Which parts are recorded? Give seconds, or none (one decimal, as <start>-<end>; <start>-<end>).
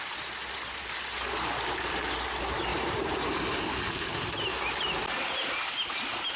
0.0-2.7; 3.7-6.4